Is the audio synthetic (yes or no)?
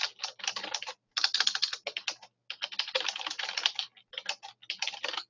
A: no